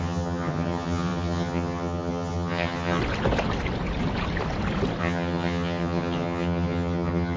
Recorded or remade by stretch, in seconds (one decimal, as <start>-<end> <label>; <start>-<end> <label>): 0.0-3.0 remade; 3.0-5.0 recorded; 5.0-7.4 remade